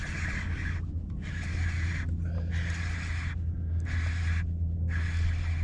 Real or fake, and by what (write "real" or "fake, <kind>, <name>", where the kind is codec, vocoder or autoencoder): real